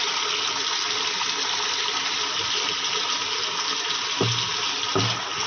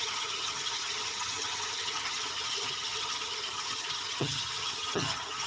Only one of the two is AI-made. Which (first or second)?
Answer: second